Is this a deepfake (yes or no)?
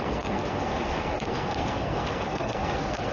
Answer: yes